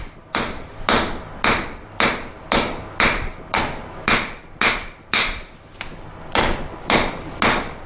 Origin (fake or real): real